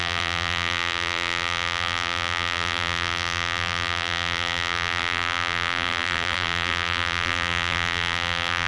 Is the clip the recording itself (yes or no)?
no